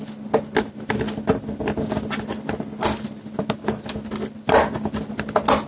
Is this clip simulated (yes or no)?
no